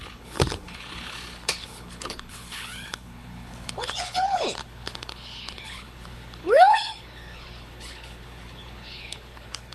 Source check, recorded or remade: remade